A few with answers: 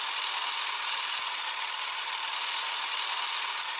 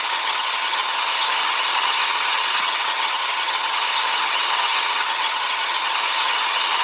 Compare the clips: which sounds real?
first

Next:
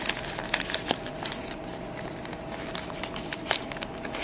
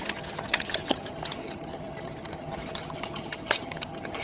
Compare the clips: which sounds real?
first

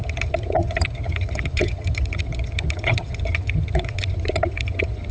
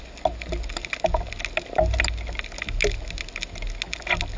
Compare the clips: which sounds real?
second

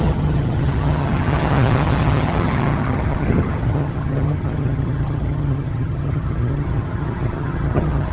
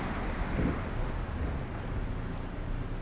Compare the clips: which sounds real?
second